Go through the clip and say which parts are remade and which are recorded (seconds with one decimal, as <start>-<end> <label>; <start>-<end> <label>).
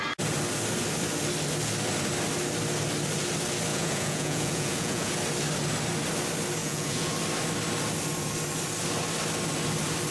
0.0-3.7 recorded; 3.7-5.1 remade; 5.1-6.6 recorded; 6.6-7.1 remade; 7.1-10.1 recorded